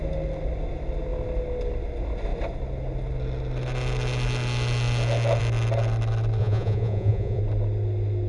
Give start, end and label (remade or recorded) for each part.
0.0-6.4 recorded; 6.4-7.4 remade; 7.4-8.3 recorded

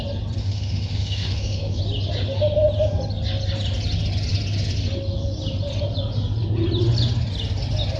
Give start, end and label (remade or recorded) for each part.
0.0-0.4 recorded; 0.4-1.8 remade; 1.8-8.0 recorded

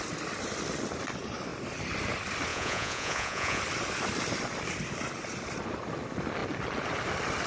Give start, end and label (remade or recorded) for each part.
0.0-2.5 recorded; 2.5-3.6 remade; 3.6-7.5 recorded